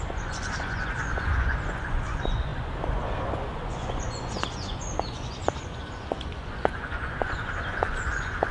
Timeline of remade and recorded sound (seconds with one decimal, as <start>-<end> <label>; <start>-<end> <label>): 0.0-8.5 remade